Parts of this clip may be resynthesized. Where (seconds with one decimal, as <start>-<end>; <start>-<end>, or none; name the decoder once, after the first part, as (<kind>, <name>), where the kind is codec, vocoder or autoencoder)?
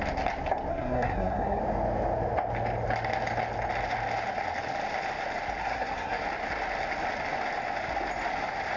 0.7-1.6 (codec, SNAC); 5.6-6.2